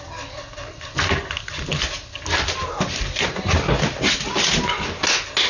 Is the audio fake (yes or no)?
no